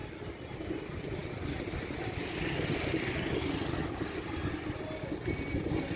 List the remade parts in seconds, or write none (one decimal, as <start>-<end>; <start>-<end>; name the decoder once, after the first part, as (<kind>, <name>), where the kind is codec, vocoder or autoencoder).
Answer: none